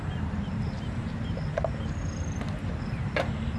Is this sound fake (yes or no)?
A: yes